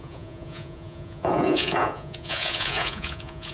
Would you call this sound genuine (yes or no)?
no